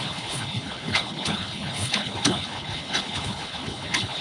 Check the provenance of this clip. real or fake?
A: fake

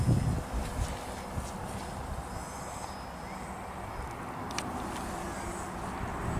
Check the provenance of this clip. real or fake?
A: real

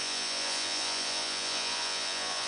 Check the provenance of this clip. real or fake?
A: fake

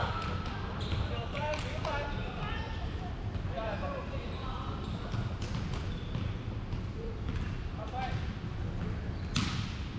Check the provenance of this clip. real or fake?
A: real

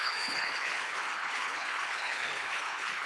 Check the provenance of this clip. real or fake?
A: fake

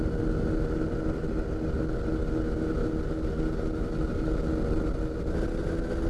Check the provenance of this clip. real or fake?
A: real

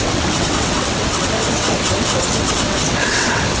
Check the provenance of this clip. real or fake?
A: fake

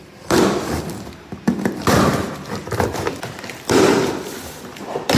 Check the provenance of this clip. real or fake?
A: real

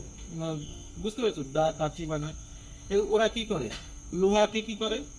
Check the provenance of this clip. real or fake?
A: fake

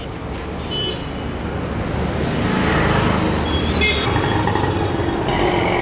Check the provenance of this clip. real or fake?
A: real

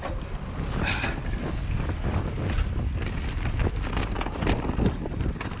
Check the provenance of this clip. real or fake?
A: real